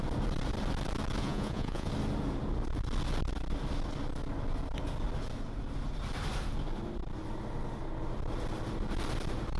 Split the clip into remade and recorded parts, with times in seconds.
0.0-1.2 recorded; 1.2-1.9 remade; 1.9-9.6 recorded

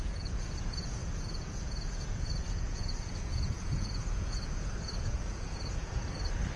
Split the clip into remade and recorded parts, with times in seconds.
0.0-6.0 remade; 6.0-6.6 recorded

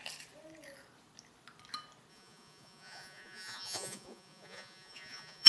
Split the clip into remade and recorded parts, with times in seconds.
0.0-2.1 recorded; 2.1-5.5 remade